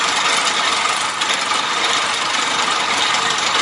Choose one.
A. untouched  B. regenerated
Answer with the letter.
A